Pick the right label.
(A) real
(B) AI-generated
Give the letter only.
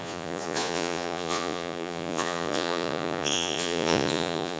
B